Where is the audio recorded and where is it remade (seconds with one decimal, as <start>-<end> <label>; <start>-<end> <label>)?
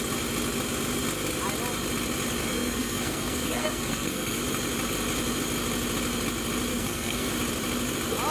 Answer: 0.0-2.4 recorded; 2.4-4.4 remade; 4.4-6.7 recorded; 6.7-7.3 remade; 7.3-8.3 recorded